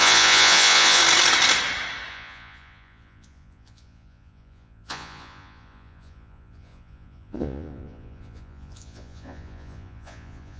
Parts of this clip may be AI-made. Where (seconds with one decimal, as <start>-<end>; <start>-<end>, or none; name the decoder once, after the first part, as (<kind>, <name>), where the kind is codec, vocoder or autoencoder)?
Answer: 0.0-1.0 (vocoder, Vocos); 2.1-10.6

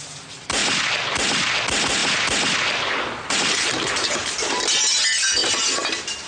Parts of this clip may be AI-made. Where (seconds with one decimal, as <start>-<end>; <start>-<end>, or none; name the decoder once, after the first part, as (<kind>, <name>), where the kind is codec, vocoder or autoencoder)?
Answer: none